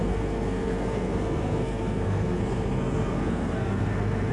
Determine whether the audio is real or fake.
fake